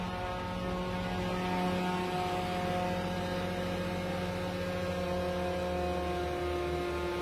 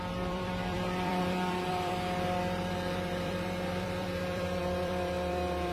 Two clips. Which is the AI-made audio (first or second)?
second